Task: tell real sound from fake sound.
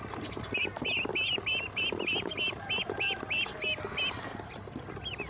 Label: real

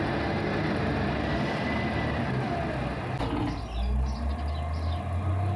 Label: real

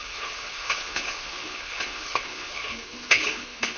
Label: fake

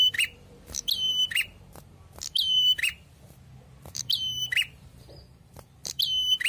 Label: fake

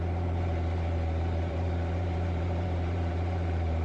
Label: fake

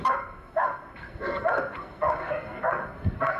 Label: fake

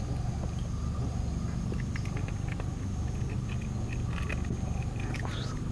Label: real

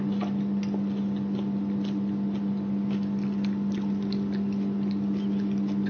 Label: real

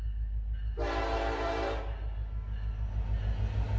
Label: real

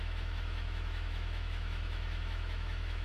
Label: fake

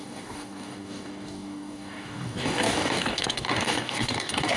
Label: fake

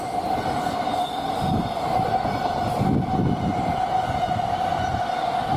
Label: real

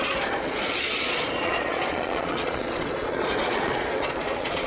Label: fake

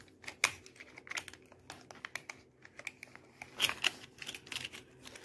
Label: real